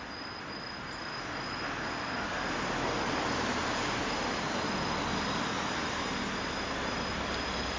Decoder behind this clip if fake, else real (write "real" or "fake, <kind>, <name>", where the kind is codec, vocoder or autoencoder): real